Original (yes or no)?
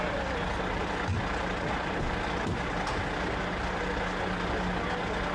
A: yes